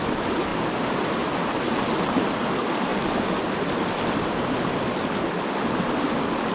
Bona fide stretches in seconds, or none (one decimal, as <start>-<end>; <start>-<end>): 0.0-0.5; 1.6-6.5